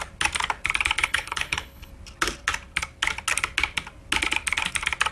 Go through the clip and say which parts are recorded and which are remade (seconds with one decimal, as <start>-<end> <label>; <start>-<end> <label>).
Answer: 0.0-1.0 recorded; 1.0-1.9 remade; 1.9-5.1 recorded